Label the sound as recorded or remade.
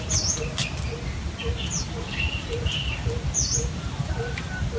recorded